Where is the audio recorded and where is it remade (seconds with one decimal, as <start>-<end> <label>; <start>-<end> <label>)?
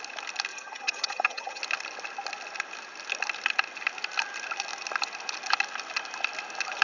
0.0-0.5 recorded; 0.5-1.6 remade; 1.6-6.8 recorded